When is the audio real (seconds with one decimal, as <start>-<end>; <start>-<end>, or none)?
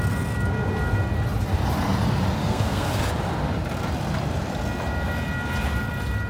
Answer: 0.0-2.4; 3.0-6.3